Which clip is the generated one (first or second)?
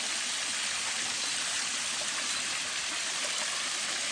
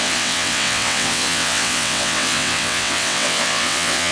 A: second